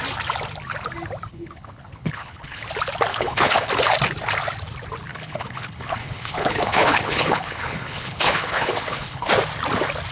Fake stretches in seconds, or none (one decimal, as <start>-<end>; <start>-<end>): 1.3-2.6; 3.1-3.7; 5.1-9.3